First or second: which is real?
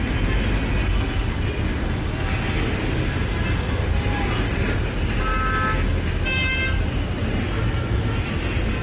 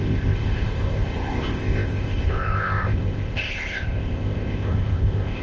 first